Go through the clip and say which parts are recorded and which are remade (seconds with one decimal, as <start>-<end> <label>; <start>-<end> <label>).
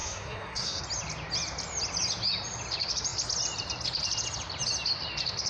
0.0-0.8 remade; 0.8-5.5 recorded